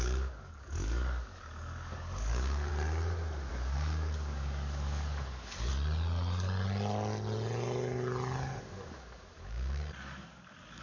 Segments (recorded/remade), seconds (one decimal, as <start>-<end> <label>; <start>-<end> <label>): 0.0-2.7 remade; 2.7-3.5 recorded; 3.5-5.7 remade; 5.7-8.6 recorded; 8.6-10.8 remade